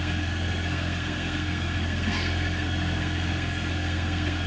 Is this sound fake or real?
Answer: fake